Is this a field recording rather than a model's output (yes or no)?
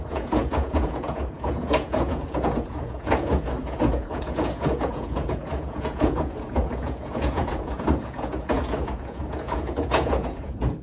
no